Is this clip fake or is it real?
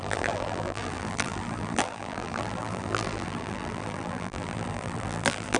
fake